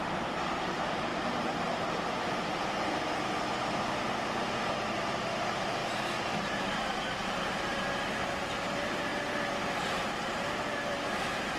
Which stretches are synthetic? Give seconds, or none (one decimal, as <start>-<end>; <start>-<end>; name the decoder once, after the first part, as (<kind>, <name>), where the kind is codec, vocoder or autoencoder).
0.0-1.1 (vocoder, BigVGAN v2); 4.9-11.6